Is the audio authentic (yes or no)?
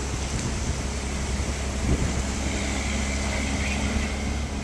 yes